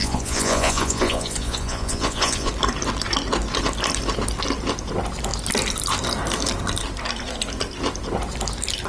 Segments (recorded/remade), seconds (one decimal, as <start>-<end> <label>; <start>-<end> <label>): 0.0-2.5 remade; 2.5-8.9 recorded